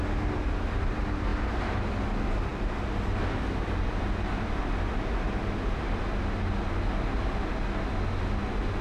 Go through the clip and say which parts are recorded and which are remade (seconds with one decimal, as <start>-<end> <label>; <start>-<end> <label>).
0.0-8.8 recorded